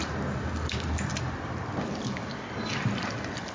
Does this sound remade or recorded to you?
recorded